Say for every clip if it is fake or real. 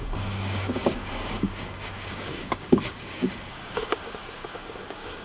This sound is fake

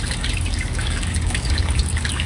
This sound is fake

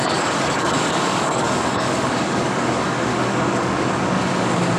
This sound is fake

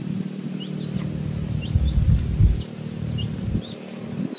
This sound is real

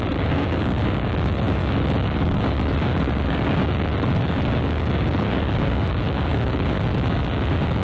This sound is fake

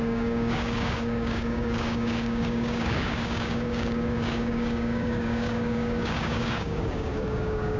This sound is fake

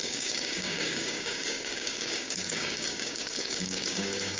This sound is fake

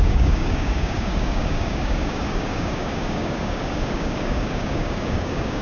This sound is fake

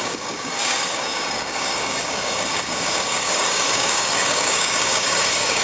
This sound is fake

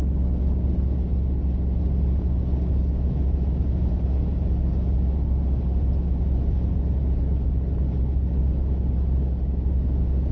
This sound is real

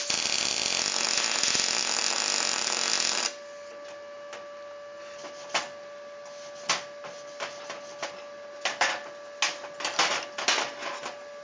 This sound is real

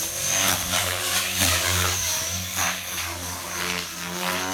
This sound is fake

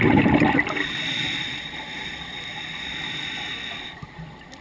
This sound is real